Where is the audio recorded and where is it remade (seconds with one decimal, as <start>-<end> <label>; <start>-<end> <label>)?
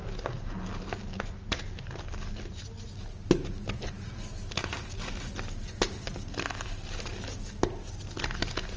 0.0-8.8 recorded